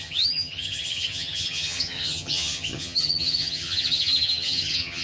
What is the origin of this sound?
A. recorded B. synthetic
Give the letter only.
B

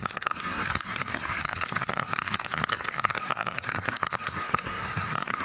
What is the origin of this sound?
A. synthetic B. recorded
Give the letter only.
A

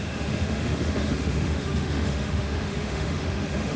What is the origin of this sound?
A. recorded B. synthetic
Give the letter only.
B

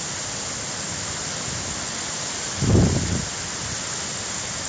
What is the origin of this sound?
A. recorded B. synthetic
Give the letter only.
A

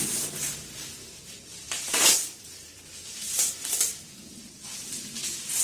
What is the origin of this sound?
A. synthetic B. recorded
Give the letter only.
A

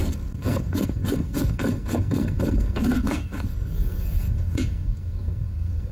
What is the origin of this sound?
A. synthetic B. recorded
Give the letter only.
A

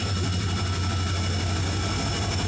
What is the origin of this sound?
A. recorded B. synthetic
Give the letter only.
A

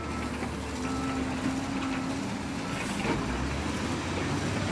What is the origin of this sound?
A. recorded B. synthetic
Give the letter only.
A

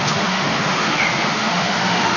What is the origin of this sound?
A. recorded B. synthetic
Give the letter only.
B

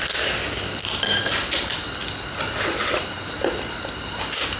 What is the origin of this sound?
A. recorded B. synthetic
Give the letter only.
A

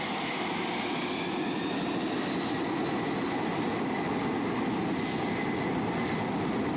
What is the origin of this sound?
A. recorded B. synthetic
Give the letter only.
A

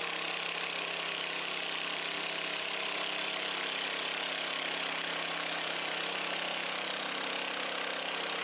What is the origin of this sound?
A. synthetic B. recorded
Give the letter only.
B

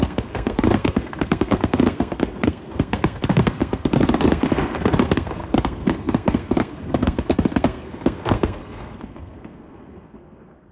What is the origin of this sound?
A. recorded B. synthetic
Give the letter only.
B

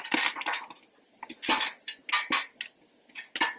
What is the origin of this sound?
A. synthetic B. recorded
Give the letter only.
B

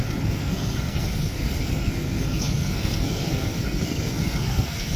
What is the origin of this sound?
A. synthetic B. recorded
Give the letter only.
A